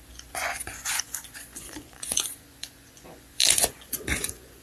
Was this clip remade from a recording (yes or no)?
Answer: yes